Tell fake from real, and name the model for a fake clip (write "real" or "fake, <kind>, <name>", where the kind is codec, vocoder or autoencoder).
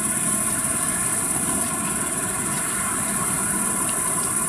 real